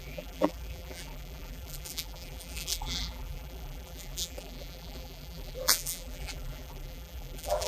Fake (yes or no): yes